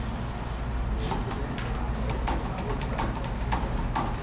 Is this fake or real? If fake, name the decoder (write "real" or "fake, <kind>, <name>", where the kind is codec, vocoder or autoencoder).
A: real